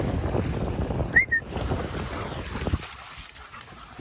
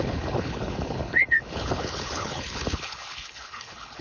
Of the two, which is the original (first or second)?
first